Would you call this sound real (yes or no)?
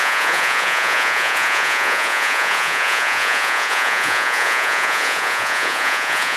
no